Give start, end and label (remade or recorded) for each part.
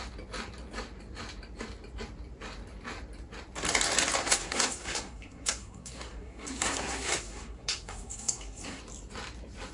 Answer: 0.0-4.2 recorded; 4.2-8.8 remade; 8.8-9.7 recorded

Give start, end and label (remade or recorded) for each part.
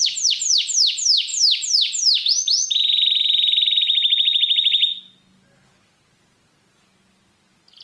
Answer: 0.0-7.8 recorded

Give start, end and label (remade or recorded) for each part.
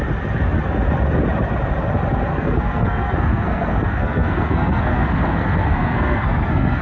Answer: 0.0-2.3 recorded; 2.3-6.8 remade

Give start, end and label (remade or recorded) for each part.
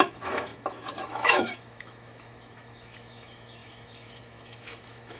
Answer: 0.0-5.2 remade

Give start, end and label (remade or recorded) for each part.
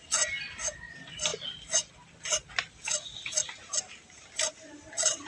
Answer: 0.0-5.3 recorded